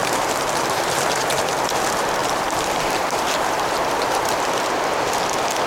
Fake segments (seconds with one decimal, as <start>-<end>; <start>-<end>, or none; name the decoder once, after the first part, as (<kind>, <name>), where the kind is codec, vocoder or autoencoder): 0.0-1.6 (vocoder, BigVGAN v2); 2.2-4.3